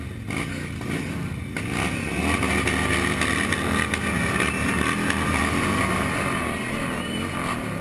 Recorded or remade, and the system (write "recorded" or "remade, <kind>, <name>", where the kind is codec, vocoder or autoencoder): recorded